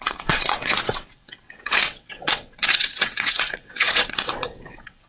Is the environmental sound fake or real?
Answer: fake